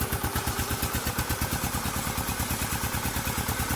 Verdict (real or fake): real